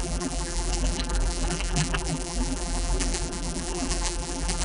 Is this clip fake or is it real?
fake